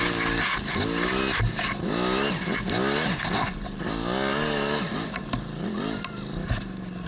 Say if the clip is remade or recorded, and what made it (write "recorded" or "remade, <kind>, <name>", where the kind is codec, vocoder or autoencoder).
recorded